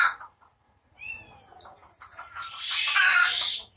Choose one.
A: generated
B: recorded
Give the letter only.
A